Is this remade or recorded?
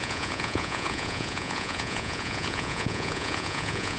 remade